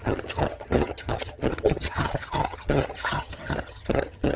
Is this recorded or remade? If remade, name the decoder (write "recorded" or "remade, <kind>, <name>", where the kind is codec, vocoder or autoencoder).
remade, vocoder, HiFi-GAN